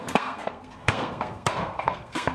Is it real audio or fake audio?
fake